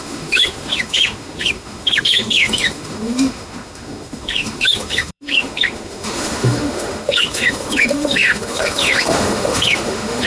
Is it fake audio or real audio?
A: fake